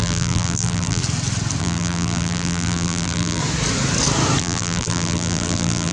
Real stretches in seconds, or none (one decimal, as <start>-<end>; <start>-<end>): 1.0-1.6; 3.4-4.4